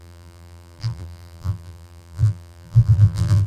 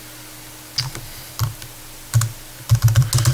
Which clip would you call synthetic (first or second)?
first